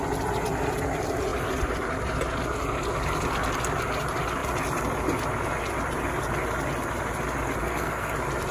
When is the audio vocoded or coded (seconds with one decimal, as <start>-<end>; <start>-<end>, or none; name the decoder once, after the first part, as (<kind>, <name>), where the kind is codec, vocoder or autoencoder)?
7.6-8.1 (codec, SNAC)